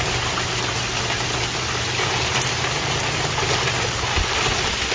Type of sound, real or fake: real